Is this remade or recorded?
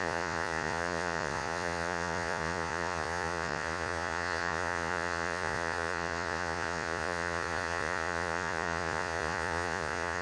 remade